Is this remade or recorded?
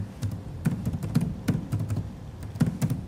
recorded